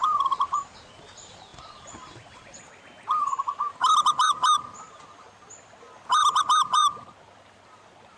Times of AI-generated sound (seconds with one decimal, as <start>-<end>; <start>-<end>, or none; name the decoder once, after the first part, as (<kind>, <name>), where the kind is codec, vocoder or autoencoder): none